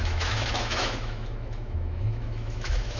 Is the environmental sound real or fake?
fake